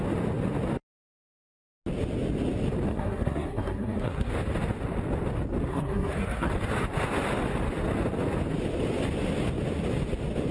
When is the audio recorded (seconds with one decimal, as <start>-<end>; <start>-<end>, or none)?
0.0-2.9; 4.3-5.7; 6.5-10.5